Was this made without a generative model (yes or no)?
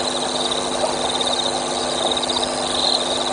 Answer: yes